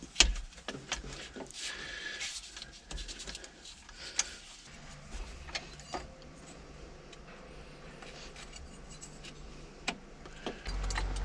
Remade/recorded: recorded